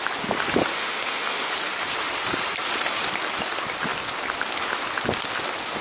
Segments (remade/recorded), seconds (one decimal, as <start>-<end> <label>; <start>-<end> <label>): 0.0-0.7 recorded; 0.7-1.5 remade; 1.5-5.8 recorded